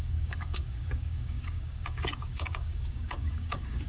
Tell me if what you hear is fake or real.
fake